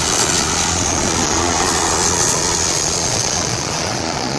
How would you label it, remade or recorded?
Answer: remade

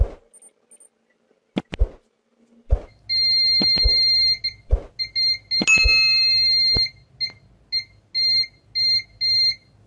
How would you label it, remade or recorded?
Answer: recorded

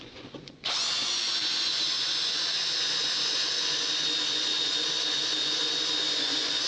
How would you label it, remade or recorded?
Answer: remade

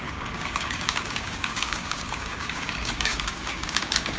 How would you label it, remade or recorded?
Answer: remade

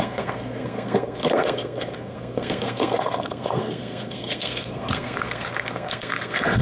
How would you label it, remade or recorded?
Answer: remade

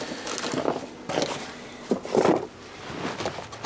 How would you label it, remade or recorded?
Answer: recorded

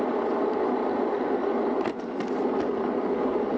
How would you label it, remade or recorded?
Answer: recorded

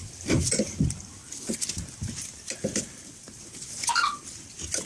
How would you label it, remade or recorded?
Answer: recorded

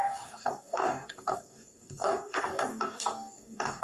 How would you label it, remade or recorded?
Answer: remade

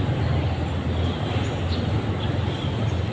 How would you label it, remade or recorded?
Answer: recorded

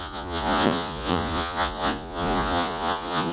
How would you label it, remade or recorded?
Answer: remade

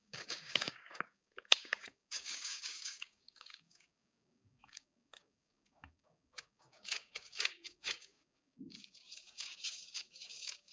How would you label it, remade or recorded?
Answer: remade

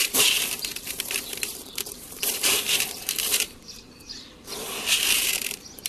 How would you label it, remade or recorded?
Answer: remade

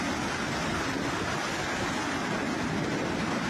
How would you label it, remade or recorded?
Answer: recorded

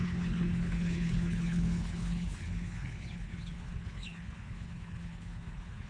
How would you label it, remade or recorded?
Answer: remade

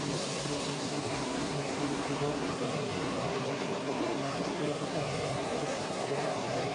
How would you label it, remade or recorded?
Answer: remade